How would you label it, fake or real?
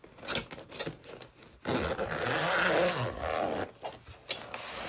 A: real